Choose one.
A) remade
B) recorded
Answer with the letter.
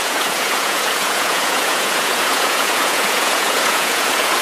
A